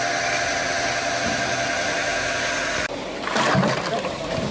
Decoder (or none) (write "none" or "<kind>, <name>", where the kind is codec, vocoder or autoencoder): none